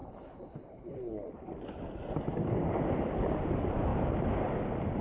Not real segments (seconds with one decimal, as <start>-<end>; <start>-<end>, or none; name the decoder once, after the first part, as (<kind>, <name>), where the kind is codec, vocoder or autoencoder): 0.0-1.3 (codec, HILCodec)

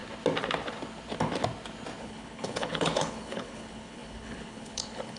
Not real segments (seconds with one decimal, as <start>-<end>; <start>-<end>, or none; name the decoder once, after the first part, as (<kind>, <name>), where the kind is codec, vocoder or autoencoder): 2.0-5.2 (codec, HILCodec)

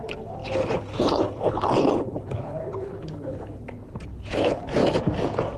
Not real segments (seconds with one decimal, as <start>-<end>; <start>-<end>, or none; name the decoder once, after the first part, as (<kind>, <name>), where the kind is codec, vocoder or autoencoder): 0.0-4.8 (codec, HILCodec)

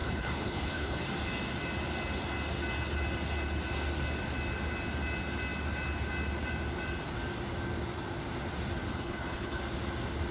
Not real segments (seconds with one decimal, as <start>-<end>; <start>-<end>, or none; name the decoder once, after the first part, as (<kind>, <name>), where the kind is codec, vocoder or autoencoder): 0.0-1.0 (codec, HILCodec); 8.9-9.6

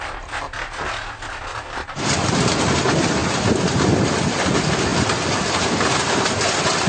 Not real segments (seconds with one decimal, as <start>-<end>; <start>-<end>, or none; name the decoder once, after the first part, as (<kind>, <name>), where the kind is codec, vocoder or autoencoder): none

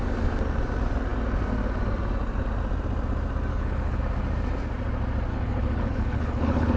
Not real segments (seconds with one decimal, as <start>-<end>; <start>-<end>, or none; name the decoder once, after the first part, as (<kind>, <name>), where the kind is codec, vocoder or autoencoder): 3.5-4.0 (codec, HILCodec); 5.3-6.8